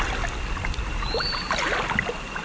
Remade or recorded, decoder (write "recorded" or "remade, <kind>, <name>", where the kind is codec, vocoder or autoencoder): recorded